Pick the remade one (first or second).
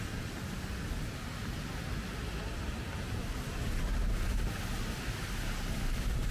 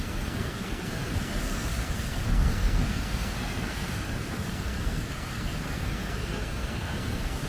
second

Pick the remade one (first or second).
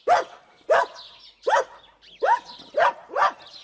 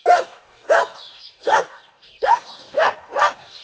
second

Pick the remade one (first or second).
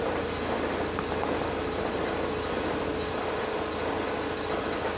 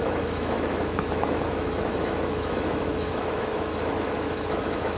second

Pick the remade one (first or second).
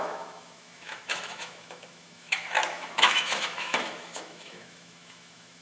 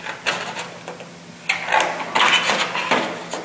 first